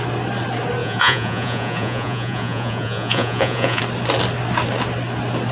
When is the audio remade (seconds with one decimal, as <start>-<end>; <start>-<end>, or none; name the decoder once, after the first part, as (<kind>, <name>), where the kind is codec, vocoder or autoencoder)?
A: 0.8-3.8 (vocoder, Vocos)